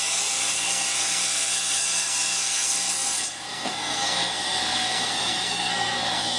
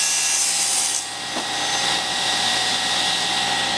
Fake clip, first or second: first